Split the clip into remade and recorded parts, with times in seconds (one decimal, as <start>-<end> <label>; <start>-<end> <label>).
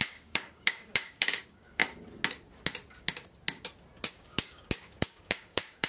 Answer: 0.0-1.8 remade; 1.8-4.1 recorded; 4.1-5.9 remade